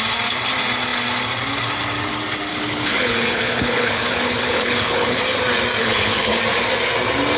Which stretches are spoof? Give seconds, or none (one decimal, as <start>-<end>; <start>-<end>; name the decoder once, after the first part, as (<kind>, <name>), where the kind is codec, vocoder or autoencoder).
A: 2.5-5.2 (codec, HILCodec); 5.8-6.4